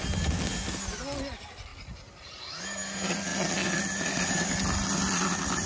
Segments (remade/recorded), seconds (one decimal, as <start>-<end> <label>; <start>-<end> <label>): 0.0-5.7 recorded